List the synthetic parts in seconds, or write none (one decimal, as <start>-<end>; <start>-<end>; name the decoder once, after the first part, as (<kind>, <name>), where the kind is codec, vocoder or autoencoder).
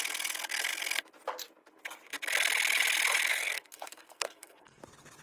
3.3-4.8 (codec, SNAC)